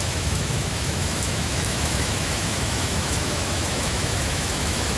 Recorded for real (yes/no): no